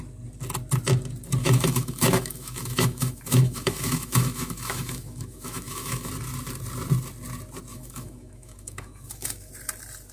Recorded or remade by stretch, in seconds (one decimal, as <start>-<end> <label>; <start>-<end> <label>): 0.0-1.4 recorded; 1.4-6.1 remade; 6.1-7.7 recorded; 7.7-9.5 remade; 9.5-10.1 recorded

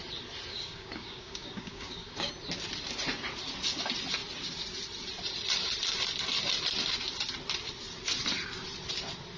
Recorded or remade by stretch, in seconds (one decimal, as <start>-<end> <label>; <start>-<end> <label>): 0.0-0.5 recorded; 0.5-2.3 remade; 2.3-9.4 recorded

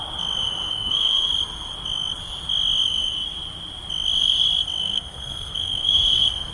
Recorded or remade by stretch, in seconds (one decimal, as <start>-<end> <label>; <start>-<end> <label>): 0.0-0.7 recorded; 0.7-1.3 remade; 1.3-4.8 recorded; 4.8-6.5 remade